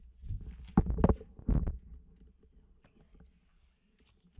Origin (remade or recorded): recorded